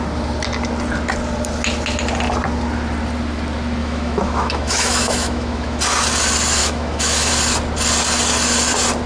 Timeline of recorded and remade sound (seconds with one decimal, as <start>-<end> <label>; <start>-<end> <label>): 0.0-3.8 recorded; 3.8-5.8 remade; 5.8-6.6 recorded; 6.6-7.3 remade; 7.3-9.1 recorded